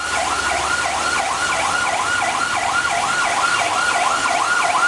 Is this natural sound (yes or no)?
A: yes